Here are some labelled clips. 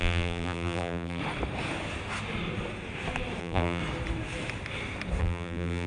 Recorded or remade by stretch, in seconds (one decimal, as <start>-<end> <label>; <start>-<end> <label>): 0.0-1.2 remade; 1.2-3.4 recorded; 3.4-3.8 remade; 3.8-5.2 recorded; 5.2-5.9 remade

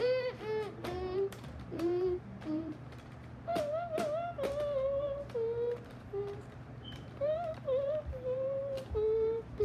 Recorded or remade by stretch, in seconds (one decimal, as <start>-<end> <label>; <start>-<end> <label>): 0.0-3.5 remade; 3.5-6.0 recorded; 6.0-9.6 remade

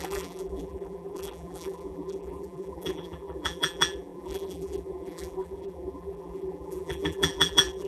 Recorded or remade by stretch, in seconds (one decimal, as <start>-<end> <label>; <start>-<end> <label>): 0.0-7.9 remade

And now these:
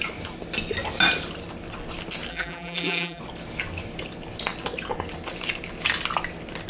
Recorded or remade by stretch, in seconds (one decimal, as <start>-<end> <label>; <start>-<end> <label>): 0.0-2.3 recorded; 2.3-3.2 remade; 3.2-6.7 recorded

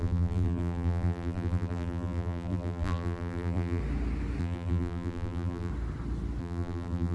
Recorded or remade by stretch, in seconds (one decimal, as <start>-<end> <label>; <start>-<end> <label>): 0.0-3.8 remade; 3.8-4.4 recorded; 4.4-5.7 remade; 5.7-6.4 recorded; 6.4-7.1 remade